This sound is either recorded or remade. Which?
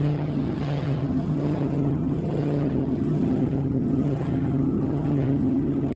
remade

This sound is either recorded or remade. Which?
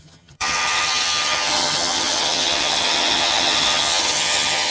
remade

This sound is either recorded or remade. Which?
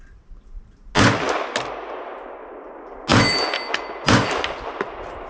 recorded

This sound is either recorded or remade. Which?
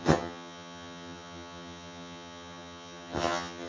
remade